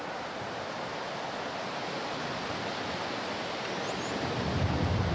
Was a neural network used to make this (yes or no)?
no